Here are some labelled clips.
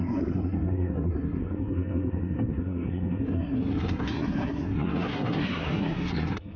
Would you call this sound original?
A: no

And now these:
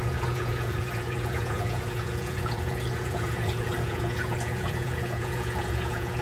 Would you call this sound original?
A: no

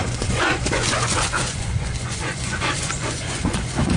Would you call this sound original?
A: no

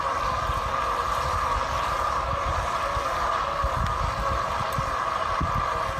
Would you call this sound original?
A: yes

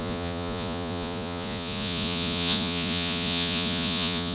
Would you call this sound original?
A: no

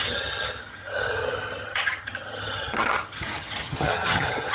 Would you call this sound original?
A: no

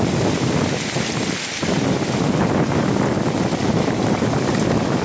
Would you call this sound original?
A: yes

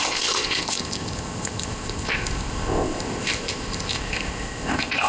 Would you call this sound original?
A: no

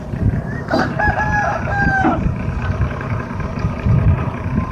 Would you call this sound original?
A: no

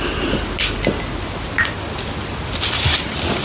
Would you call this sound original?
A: yes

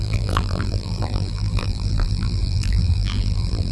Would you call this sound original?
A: no